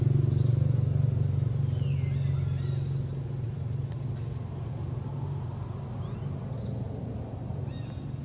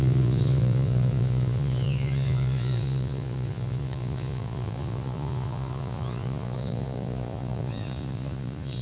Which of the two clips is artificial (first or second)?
second